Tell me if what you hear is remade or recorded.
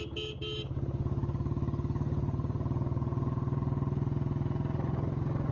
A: recorded